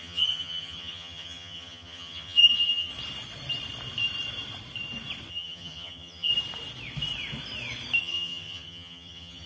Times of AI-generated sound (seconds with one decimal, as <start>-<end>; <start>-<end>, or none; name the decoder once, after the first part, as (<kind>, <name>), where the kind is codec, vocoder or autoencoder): 0.0-2.9 (vocoder, HiFi-GAN); 5.3-6.3; 8.0-9.5